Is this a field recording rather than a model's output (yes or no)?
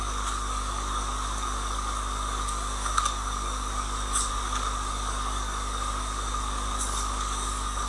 no